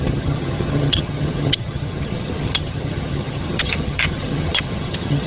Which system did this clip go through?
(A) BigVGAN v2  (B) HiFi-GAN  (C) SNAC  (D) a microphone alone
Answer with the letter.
B